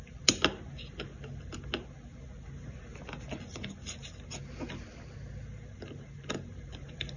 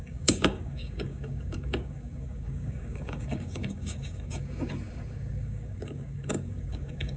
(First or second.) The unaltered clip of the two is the first